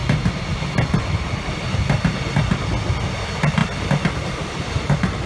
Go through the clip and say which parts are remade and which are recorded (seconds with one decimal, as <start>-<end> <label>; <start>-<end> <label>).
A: 0.0-5.3 recorded